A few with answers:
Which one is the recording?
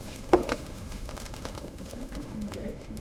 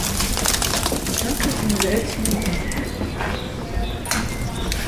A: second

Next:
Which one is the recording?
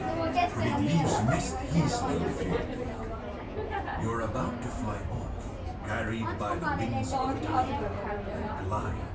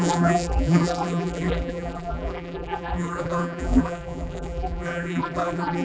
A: first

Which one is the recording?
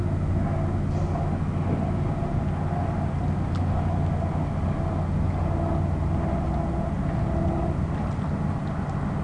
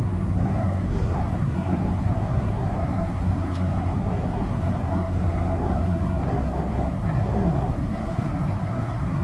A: first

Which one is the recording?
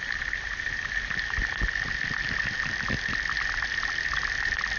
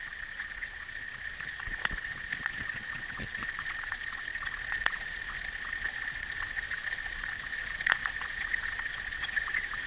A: first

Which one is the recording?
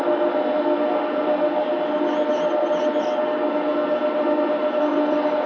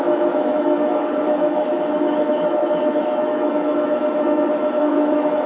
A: first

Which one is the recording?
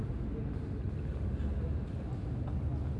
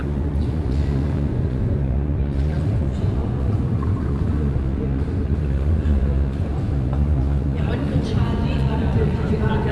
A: first